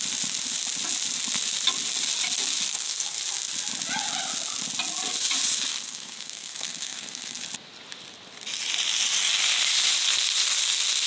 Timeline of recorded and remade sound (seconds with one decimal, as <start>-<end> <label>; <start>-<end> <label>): 0.0-2.7 recorded; 2.7-3.2 remade; 3.2-5.7 recorded; 5.7-7.4 remade; 7.4-11.1 recorded